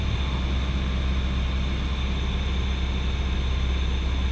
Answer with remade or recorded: recorded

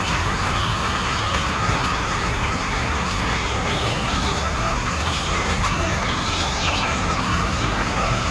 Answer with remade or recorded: remade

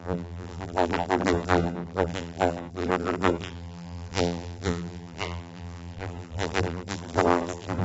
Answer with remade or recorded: remade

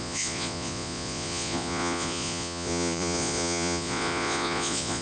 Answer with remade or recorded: remade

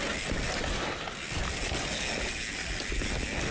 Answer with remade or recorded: recorded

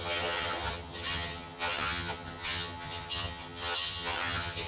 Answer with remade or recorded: remade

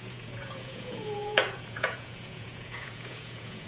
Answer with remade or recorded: remade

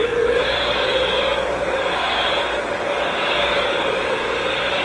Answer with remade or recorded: remade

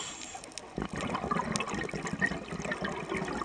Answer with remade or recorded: recorded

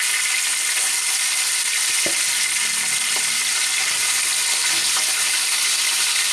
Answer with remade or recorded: recorded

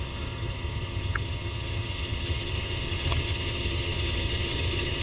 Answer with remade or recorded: remade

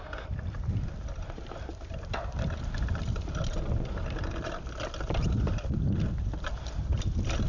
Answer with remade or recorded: recorded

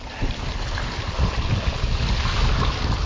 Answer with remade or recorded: recorded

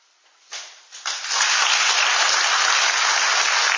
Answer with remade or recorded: recorded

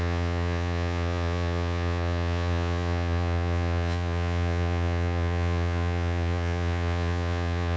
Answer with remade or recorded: remade